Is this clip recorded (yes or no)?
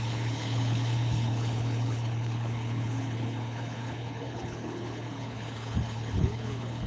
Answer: no